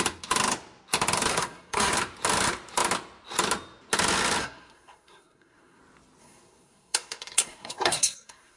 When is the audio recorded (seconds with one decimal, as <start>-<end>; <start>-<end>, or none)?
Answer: 0.0-1.3; 1.9-4.4; 5.8-6.2